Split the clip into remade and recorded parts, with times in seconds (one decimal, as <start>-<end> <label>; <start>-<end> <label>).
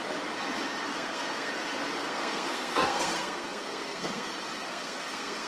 0.0-0.9 recorded; 0.9-1.5 remade; 1.5-2.0 recorded; 2.0-4.3 remade; 4.3-4.7 recorded; 4.7-5.5 remade